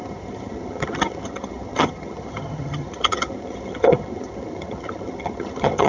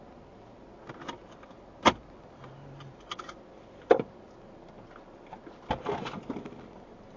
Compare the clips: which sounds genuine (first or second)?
second